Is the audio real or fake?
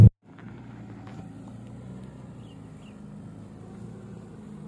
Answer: real